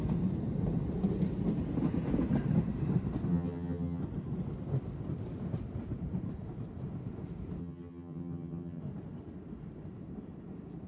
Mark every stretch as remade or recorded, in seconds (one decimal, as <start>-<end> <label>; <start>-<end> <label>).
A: 0.0-3.3 recorded; 3.3-4.0 remade; 4.0-7.6 recorded; 7.6-8.8 remade; 8.8-10.9 recorded